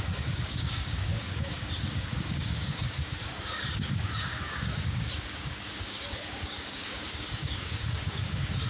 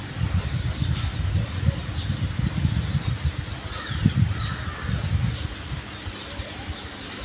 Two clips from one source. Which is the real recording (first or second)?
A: second